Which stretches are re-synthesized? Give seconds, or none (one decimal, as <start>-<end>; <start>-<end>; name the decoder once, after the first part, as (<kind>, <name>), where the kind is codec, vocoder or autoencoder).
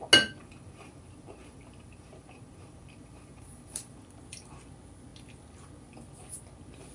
0.4-4.1 (vocoder, BigVGAN v2)